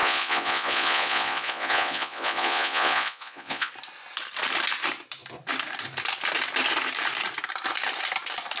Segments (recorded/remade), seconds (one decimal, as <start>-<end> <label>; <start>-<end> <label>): 0.0-3.7 remade; 3.7-8.6 recorded